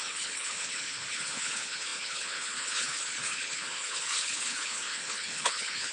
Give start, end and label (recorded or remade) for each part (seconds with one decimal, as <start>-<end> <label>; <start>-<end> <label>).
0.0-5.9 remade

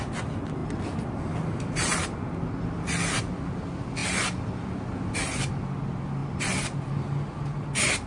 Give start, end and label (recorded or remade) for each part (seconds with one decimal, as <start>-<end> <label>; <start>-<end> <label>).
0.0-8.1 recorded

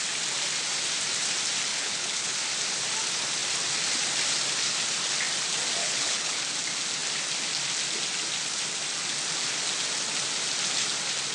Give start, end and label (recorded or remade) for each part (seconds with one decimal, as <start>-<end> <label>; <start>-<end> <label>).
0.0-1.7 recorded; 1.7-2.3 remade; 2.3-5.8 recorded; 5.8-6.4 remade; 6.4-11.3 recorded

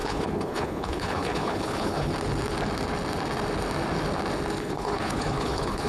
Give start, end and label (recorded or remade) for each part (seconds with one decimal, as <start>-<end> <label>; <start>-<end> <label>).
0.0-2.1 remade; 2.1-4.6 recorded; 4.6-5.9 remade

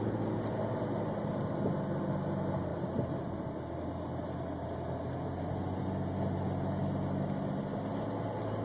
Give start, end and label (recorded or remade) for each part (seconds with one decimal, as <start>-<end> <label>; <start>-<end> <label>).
0.0-8.6 recorded

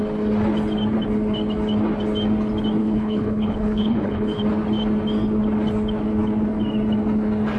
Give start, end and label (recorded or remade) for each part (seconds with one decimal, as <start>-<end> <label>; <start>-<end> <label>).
0.0-2.8 recorded; 2.8-4.4 remade; 4.4-7.6 recorded

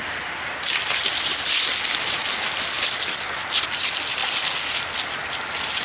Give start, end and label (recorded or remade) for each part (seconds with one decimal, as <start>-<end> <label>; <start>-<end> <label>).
0.0-5.8 recorded

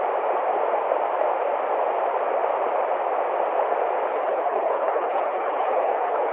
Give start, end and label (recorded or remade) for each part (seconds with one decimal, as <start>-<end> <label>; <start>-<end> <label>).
0.0-4.1 recorded; 4.1-6.3 remade